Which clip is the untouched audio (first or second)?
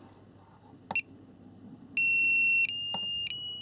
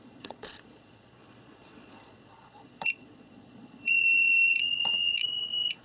first